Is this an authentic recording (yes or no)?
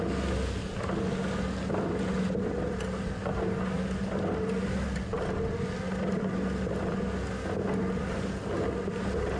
yes